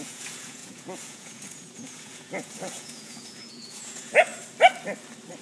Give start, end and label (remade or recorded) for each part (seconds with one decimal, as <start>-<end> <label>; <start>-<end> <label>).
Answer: 0.0-4.3 remade; 4.3-5.4 recorded